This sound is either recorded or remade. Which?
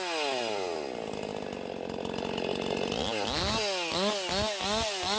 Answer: recorded